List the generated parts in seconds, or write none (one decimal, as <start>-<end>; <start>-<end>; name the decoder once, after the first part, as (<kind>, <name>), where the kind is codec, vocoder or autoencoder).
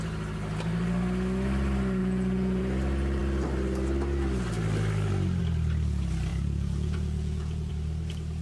2.0-2.6 (vocoder, Vocos); 6.3-7.7